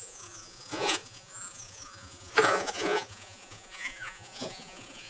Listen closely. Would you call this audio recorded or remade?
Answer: remade